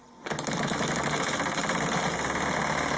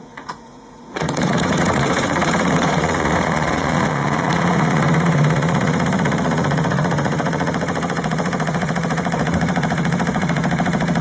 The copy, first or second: second